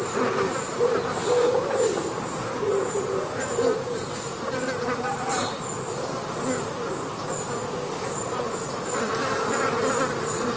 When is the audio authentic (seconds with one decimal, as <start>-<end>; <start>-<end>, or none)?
0.0-10.6